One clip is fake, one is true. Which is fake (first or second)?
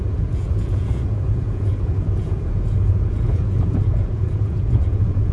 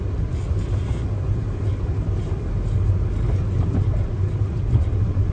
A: first